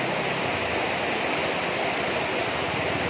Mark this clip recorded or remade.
recorded